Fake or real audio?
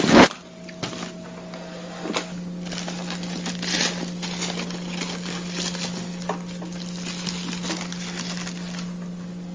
real